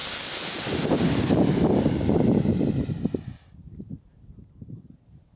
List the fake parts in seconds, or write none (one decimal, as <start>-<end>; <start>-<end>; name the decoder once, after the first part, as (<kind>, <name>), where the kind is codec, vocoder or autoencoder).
0.0-5.4 (vocoder, BigVGAN v2)

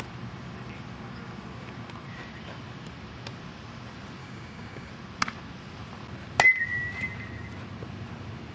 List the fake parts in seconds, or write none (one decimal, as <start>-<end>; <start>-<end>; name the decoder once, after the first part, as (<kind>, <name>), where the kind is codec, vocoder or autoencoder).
4.2-4.9 (codec, DAC)